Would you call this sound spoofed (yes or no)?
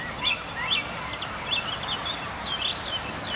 no